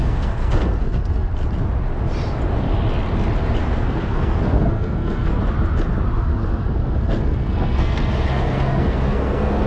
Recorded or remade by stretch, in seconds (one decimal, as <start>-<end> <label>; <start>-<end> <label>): 0.0-1.3 remade; 1.3-3.6 recorded; 3.6-5.4 remade; 5.4-6.3 recorded; 6.3-9.7 remade